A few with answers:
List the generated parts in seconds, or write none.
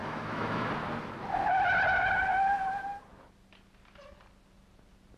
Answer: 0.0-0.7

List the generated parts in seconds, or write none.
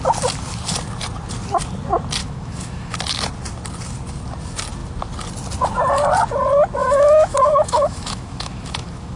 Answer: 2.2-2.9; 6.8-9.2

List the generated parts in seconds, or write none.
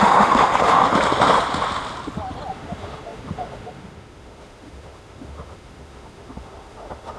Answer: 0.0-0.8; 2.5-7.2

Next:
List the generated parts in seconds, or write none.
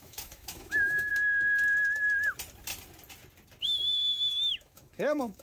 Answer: 0.0-1.1; 4.3-5.4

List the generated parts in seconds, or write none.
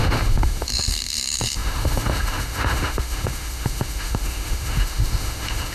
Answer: 0.0-5.7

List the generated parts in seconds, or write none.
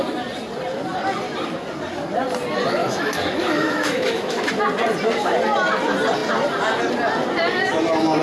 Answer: 2.8-4.5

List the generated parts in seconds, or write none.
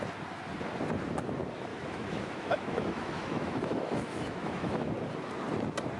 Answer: 1.7-4.9